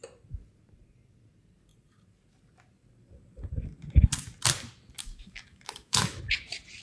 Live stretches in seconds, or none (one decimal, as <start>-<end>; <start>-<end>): 0.0-5.0; 6.2-6.8